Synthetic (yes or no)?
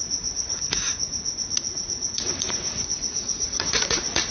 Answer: yes